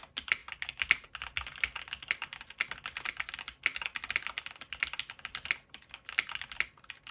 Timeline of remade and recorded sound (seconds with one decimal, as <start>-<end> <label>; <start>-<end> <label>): 0.0-7.1 recorded